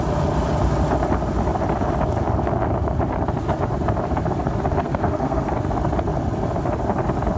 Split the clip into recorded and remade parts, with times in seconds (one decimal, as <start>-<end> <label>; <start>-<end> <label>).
0.0-4.8 recorded; 4.8-5.5 remade; 5.5-7.4 recorded